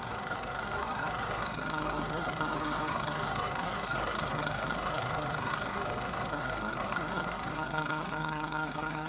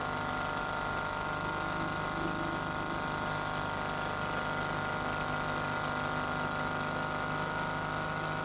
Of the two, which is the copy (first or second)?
first